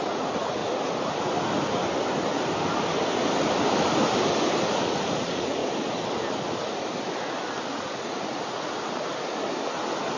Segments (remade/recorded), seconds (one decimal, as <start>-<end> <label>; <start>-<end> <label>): 0.0-0.6 remade; 0.6-4.8 recorded; 4.8-5.6 remade; 5.6-8.0 recorded; 8.0-8.7 remade; 8.7-10.2 recorded